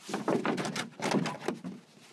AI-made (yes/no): no